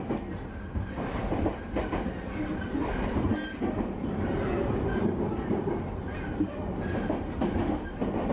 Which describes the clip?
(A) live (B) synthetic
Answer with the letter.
A